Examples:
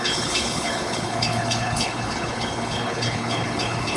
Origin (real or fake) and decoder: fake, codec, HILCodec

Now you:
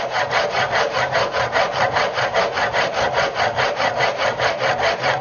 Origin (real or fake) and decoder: real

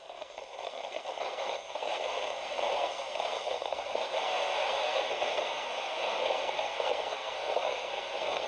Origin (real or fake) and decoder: fake, codec, SNAC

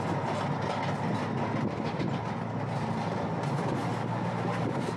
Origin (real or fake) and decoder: real